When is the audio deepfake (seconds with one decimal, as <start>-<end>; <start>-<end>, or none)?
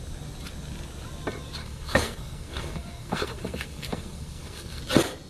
1.6-4.8